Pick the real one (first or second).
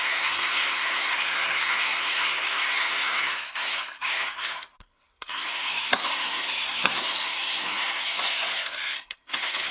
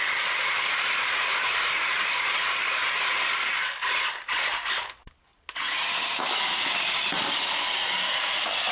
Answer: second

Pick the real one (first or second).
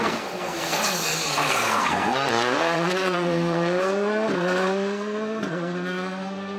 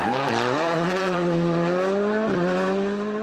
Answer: second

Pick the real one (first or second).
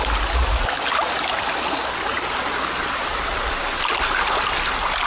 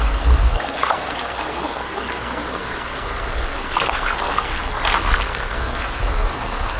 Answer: first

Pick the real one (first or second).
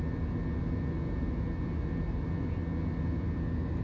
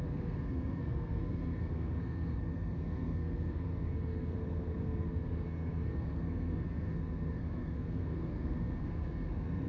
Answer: first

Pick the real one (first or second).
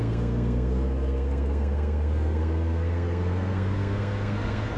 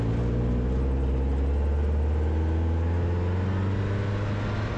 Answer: second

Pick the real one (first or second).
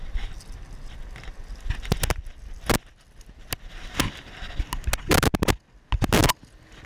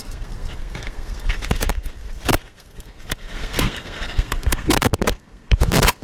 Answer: first